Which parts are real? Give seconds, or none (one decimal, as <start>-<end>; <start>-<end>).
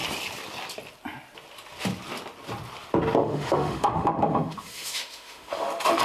0.0-3.2